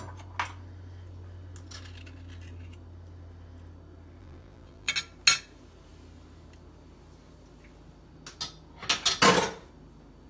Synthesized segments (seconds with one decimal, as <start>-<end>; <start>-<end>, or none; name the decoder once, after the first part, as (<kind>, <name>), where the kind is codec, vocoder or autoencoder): 4.2-4.9 (vocoder, BigVGAN v2)